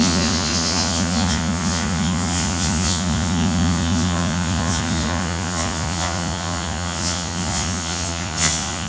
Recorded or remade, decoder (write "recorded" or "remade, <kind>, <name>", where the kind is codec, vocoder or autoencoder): remade, vocoder, Vocos